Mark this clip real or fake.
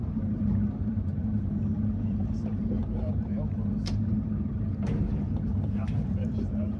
fake